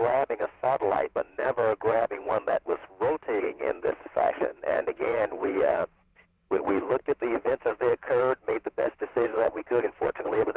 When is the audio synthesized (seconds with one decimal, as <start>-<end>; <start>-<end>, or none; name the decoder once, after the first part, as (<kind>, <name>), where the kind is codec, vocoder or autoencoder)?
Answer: 0.0-2.8 (vocoder, WaveNeXt); 3.4-10.6